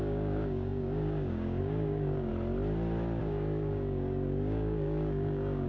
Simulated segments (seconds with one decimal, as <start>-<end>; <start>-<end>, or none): 0.0-2.3; 3.2-5.7